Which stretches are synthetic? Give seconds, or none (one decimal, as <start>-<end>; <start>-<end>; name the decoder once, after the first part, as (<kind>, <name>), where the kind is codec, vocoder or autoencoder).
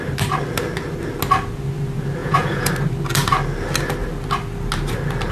2.2-2.7 (vocoder, Vocos)